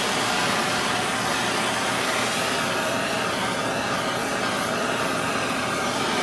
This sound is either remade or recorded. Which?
recorded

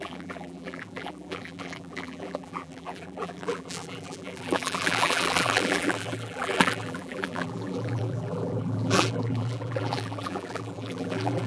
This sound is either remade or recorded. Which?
remade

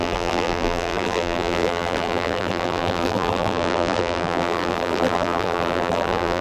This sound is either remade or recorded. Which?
remade